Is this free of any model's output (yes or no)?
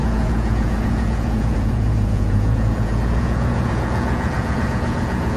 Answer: no